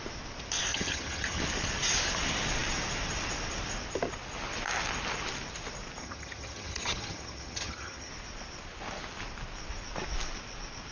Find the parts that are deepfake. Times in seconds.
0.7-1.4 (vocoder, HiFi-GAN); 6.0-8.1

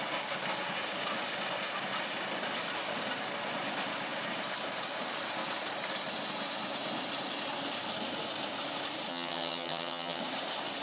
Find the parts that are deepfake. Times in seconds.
9.1-10.2 (vocoder, HiFi-GAN)

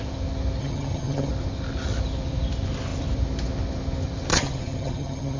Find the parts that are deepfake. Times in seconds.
0.6-1.3 (vocoder, HiFi-GAN); 4.3-5.4

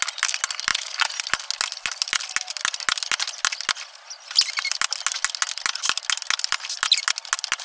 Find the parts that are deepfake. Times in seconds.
none

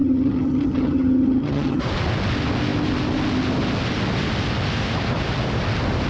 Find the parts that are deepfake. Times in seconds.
0.0-1.8 (vocoder, HiFi-GAN)

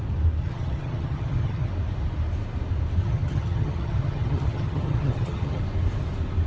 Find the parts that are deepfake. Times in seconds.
0.4-1.7 (vocoder, HiFi-GAN); 3.0-5.6